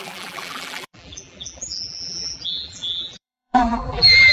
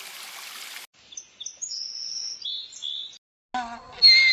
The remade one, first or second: first